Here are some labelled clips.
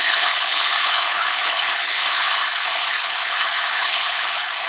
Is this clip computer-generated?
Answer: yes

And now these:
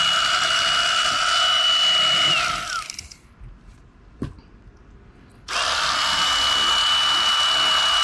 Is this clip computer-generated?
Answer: no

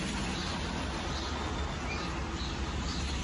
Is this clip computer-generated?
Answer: no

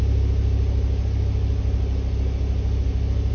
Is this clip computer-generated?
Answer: no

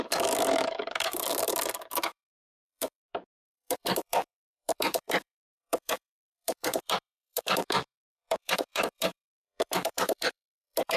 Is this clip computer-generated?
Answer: yes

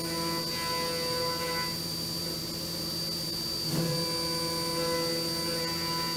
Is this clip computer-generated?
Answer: no